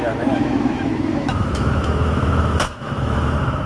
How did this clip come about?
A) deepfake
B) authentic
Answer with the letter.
A